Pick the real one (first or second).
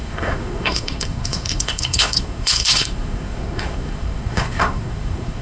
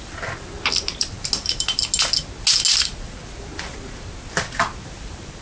second